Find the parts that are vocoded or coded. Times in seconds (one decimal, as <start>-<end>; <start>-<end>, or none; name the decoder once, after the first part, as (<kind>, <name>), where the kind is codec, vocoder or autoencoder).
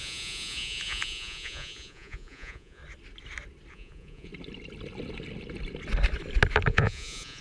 0.0-2.8 (vocoder, Vocos); 3.7-4.3; 6.7-7.4